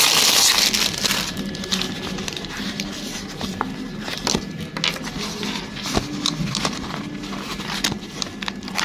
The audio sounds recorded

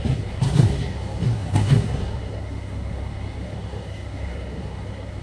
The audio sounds remade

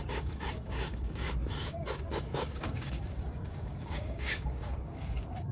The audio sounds remade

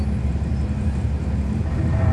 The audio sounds recorded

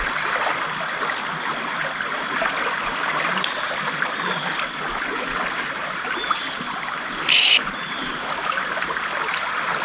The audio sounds recorded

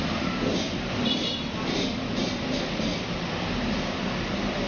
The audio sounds recorded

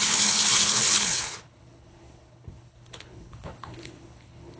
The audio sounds remade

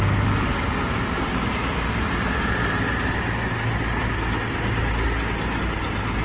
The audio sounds recorded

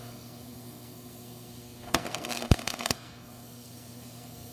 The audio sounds remade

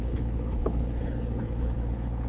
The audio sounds remade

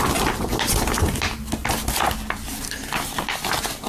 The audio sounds recorded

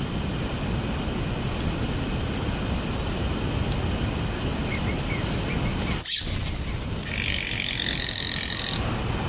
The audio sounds recorded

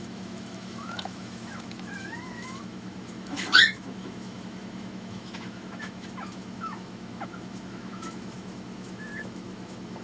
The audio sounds remade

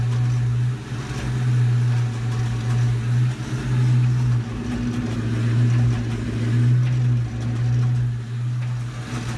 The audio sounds recorded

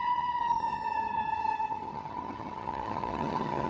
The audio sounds remade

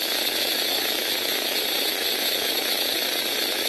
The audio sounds remade